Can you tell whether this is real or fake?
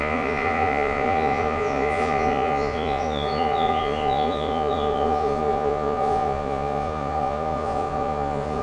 fake